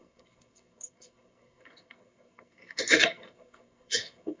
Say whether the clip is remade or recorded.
remade